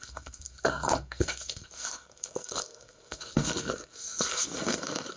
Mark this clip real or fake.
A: fake